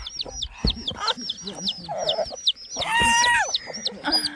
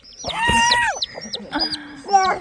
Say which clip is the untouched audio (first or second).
first